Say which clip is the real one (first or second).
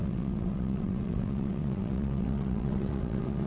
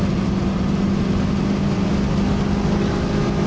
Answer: second